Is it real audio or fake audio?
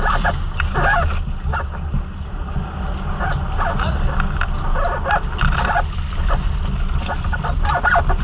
real